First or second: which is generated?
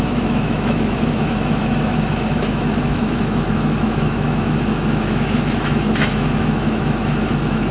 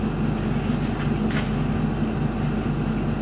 first